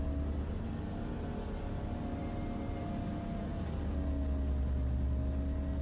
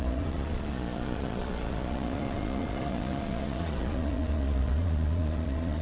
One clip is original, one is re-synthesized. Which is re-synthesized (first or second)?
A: second